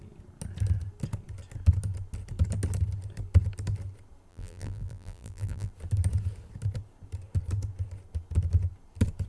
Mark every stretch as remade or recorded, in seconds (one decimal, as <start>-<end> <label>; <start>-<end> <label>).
0.0-4.3 recorded; 4.3-5.7 remade; 5.7-9.3 recorded